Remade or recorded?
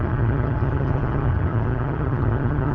remade